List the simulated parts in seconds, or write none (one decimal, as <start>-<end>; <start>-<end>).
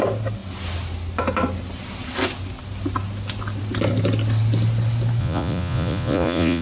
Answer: 5.2-6.6